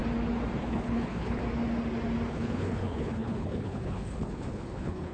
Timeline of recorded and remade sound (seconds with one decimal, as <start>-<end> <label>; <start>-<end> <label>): 0.0-0.6 recorded; 0.6-1.4 remade; 1.4-2.3 recorded; 2.3-5.1 remade